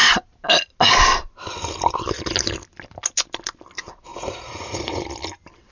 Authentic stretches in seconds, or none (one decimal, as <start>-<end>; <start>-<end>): 0.0-4.1; 5.0-5.7